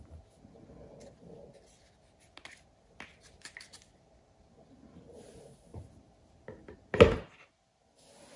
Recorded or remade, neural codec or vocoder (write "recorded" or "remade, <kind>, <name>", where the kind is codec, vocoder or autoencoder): recorded